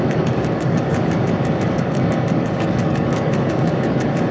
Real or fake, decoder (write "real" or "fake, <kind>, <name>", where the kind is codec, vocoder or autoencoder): fake, codec, DAC